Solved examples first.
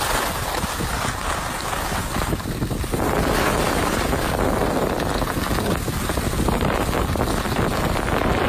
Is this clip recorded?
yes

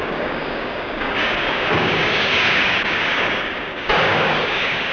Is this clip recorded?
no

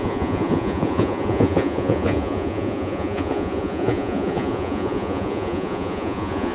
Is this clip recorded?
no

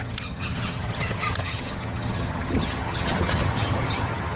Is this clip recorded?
no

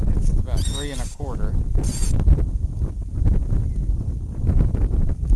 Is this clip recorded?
no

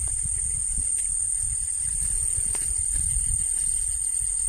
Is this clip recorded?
no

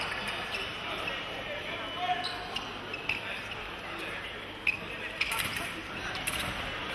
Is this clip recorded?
yes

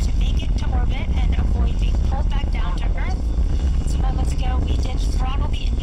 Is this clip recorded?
yes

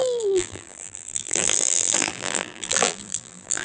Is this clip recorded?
no